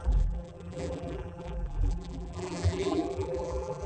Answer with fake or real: fake